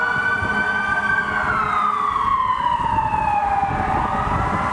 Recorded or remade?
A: recorded